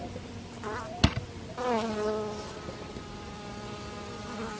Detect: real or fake real